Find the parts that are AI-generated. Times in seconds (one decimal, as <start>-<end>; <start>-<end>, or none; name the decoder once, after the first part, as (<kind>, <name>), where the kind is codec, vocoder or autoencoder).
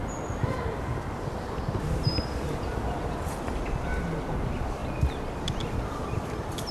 none